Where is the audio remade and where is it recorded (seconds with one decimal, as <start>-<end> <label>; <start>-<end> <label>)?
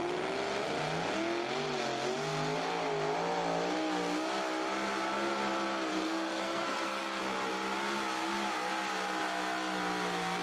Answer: 0.0-5.9 recorded; 5.9-7.2 remade; 7.2-10.4 recorded